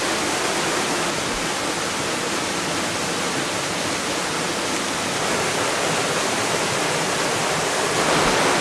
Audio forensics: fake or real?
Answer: real